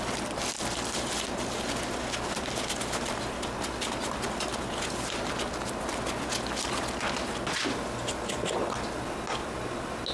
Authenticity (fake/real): real